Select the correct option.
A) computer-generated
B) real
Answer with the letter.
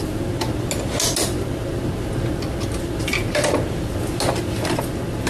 B